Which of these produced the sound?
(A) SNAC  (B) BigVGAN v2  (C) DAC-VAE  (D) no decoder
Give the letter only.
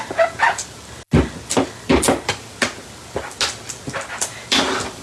D